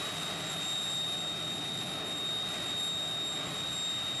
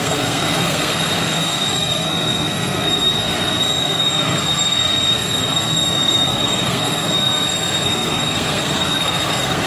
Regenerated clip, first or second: second